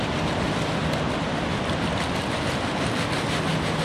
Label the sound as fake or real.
real